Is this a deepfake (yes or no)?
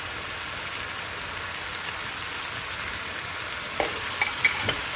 no